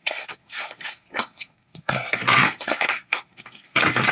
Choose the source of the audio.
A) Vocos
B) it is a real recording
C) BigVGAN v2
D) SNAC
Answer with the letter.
D